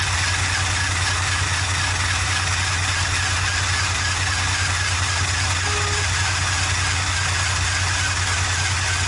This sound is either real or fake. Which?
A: real